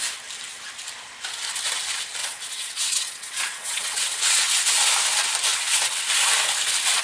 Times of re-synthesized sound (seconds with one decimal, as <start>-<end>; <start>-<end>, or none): 2.2-4.5; 5.5-6.0